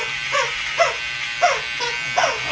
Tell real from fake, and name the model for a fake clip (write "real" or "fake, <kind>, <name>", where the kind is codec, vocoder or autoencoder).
real